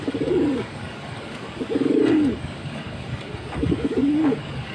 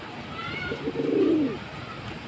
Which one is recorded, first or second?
second